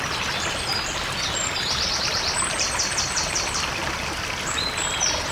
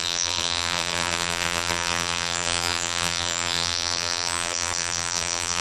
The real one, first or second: first